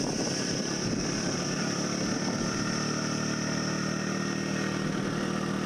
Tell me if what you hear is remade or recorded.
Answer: recorded